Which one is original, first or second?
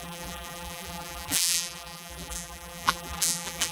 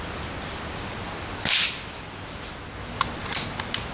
second